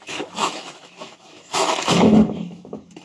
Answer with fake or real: fake